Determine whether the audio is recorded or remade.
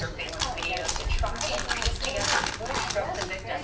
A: recorded